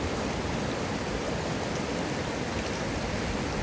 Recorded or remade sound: recorded